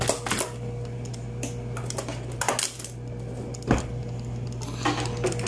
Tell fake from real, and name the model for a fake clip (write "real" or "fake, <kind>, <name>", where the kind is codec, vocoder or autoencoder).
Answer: real